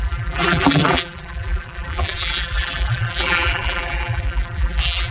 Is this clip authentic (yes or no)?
no